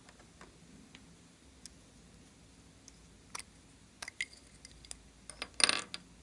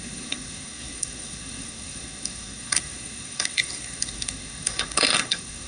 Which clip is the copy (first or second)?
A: second